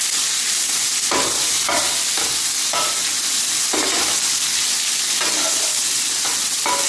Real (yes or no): yes